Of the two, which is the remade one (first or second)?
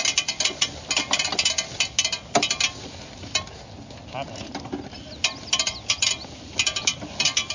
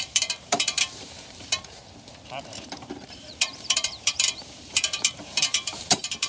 second